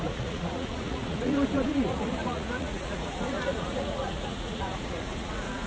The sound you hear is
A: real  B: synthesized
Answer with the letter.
B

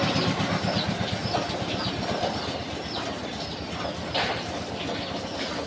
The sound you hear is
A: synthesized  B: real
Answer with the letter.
B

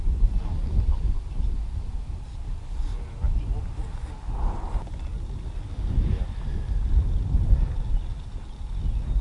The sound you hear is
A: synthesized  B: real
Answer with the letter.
B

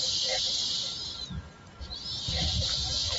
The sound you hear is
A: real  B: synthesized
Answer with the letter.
A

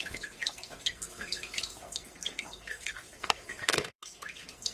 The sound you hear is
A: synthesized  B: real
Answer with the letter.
A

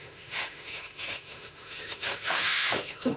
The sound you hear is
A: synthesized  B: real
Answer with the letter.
A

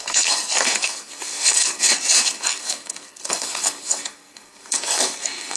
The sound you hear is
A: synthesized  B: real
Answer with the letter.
A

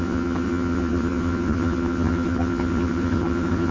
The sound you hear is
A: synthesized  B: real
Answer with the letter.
A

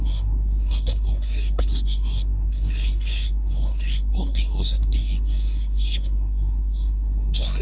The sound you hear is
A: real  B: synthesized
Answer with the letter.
B